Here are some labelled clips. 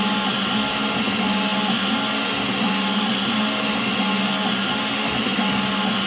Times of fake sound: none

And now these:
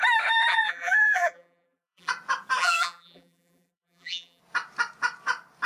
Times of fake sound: 0.5-2.1 (vocoder, BigVGAN v2); 2.6-4.4

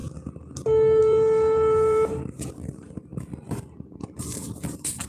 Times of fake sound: 1.0-3.1 (vocoder, BigVGAN v2); 3.9-5.1

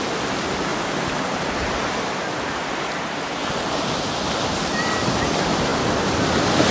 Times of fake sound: 0.7-3.5 (vocoder, BigVGAN v2)

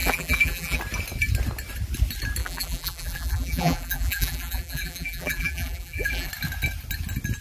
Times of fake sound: 0.0-0.8 (vocoder, BigVGAN v2); 2.4-6.3

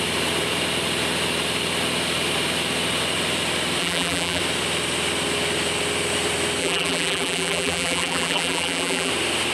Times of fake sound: 3.8-4.4 (vocoder, BigVGAN v2); 6.6-9.1